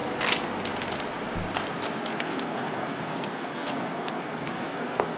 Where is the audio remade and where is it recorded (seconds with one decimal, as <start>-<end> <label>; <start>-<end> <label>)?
0.0-2.1 recorded; 2.1-5.2 remade